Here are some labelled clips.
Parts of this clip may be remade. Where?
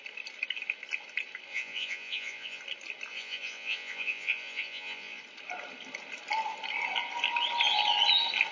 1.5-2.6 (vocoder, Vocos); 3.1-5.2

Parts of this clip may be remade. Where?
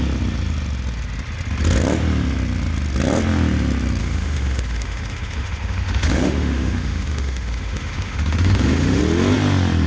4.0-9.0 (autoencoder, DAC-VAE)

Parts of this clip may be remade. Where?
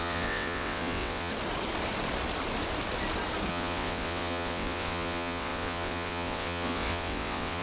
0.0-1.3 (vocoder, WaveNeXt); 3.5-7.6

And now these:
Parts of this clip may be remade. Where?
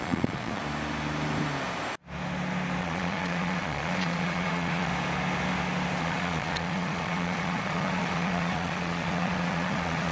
0.0-0.6 (vocoder, Vocos); 2.8-4.9; 6.0-10.1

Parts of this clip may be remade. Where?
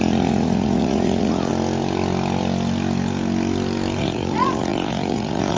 0.0-1.5 (vocoder, Vocos); 4.0-5.6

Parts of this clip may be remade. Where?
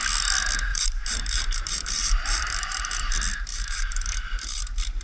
0.7-3.1 (vocoder, BigVGAN v2); 3.5-4.6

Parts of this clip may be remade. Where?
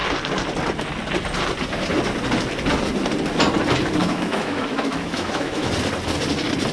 4.0-5.7 (autoencoder, DAC-VAE)